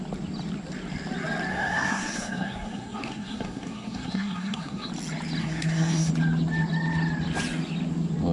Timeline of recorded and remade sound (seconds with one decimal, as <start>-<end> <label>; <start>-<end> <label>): 0.0-1.5 recorded; 1.5-4.9 remade; 4.9-5.4 recorded; 5.4-6.1 remade; 6.1-8.3 recorded